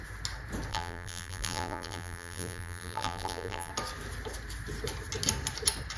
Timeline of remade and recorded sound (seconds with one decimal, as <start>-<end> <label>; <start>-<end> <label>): 0.0-0.7 recorded; 0.7-3.7 remade; 3.7-6.0 recorded